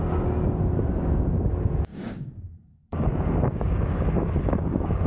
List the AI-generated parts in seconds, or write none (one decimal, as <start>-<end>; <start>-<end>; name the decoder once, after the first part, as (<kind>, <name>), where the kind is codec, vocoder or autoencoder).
1.9-5.1 (codec, DAC)